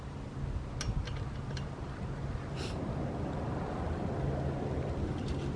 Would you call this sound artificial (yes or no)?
no